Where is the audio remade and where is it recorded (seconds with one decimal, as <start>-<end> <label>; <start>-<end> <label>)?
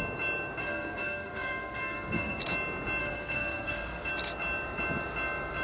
0.0-0.6 recorded; 0.6-2.4 remade; 2.4-3.0 recorded; 3.0-4.1 remade; 4.1-5.6 recorded